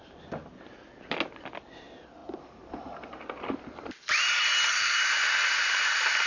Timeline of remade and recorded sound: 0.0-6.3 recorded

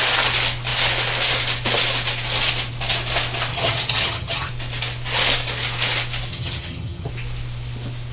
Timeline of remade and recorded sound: 0.0-3.5 recorded; 3.5-4.5 remade; 4.5-6.3 recorded; 6.3-7.1 remade; 7.1-8.1 recorded

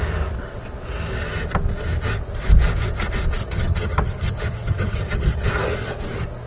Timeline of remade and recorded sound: 0.0-3.4 recorded; 3.4-5.5 remade; 5.5-6.5 recorded